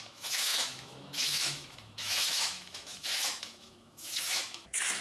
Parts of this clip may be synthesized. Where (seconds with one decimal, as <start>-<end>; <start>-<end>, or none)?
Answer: 0.0-5.0